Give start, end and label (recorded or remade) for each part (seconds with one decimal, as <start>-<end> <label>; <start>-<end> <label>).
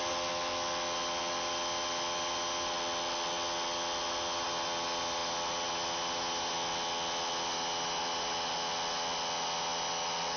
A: 0.0-10.4 recorded